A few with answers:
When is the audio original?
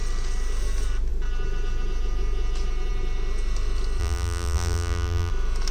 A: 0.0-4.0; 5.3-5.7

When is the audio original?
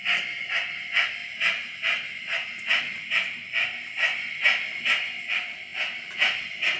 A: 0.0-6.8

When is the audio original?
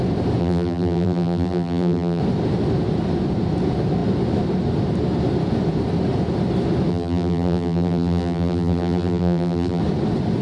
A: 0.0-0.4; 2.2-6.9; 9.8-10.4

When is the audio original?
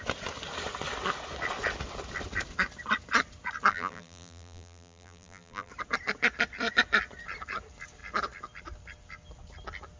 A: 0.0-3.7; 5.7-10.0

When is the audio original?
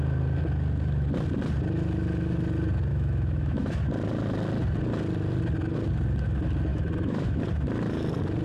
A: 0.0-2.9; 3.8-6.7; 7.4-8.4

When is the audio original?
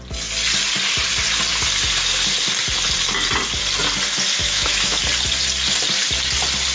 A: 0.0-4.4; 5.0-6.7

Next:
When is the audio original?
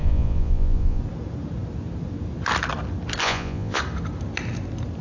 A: 1.0-3.2; 3.8-5.0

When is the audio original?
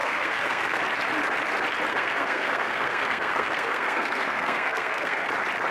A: 0.8-1.9; 5.3-5.7